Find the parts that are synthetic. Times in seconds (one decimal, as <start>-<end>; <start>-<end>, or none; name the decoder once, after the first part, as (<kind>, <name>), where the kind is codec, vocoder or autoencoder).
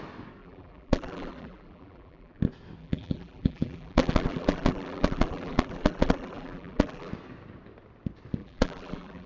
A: 0.4-2.4 (vocoder, BigVGAN v2); 2.8-7.1; 8.4-9.3